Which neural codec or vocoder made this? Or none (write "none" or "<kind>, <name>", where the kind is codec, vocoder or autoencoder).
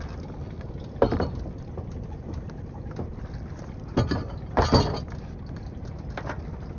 none